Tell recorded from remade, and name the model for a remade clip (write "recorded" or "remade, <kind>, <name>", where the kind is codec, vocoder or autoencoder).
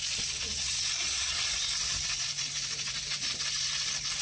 recorded